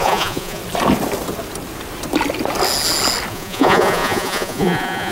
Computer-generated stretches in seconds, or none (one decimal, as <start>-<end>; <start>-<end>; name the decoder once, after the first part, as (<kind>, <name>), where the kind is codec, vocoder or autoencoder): 0.0-0.6 (vocoder, Vocos); 3.3-5.1